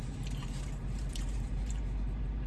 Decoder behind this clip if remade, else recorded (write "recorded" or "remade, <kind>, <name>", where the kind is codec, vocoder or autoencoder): remade, vocoder, BigVGAN v2